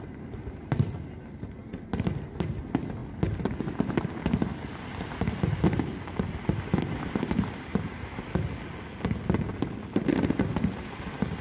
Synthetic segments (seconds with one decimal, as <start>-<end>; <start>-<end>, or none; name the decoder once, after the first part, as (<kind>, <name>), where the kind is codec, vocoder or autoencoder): none